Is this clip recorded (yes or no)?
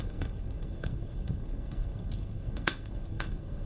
no